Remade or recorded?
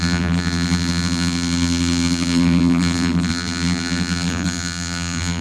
remade